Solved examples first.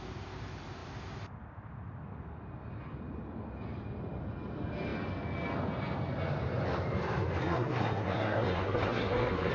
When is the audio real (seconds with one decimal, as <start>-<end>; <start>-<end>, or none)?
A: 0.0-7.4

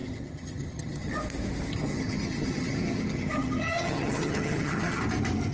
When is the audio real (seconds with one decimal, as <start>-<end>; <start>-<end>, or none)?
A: 1.2-1.7; 5.0-5.5

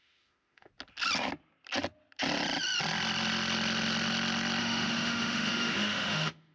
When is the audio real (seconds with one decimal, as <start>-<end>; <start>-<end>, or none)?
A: 0.7-4.6

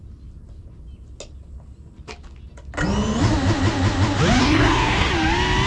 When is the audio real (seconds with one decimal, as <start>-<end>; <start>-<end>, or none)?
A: 0.0-4.4; 5.1-5.7

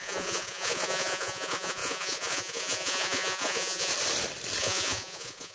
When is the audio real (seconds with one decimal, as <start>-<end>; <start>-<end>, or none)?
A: 3.9-4.6

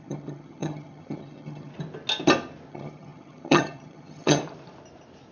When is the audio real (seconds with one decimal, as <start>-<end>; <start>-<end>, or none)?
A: 1.7-2.7; 4.4-5.3

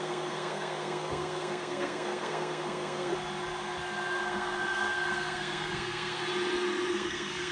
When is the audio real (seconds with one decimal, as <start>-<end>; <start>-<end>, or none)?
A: 3.1-4.2; 6.2-6.9